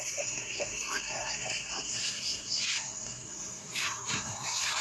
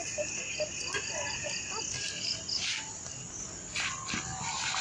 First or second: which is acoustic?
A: second